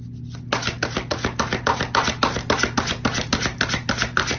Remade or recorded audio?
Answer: recorded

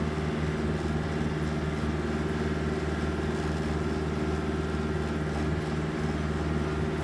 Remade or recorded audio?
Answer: recorded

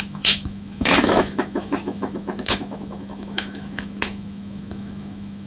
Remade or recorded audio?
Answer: remade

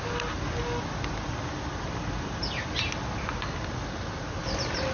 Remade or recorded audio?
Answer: recorded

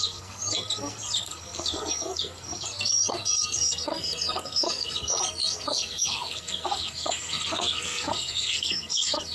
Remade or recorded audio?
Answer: remade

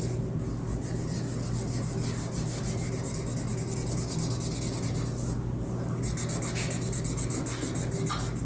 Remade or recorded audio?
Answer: recorded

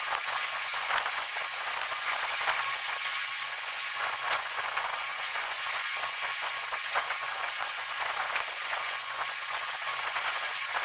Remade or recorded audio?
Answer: remade